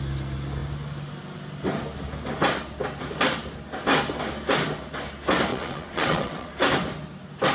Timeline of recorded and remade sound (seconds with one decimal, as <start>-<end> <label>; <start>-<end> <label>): 0.0-5.5 recorded; 5.5-6.5 remade; 6.5-7.5 recorded